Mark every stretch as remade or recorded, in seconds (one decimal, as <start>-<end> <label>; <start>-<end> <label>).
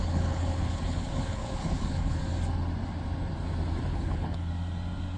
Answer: 0.0-2.2 remade; 2.2-3.9 recorded; 3.9-4.5 remade; 4.5-5.2 recorded